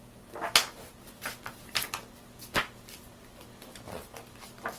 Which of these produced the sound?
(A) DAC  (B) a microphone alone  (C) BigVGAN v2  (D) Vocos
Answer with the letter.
B